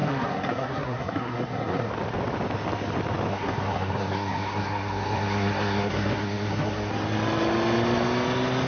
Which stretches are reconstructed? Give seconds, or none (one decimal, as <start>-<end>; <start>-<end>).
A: 0.0-1.9; 3.3-6.9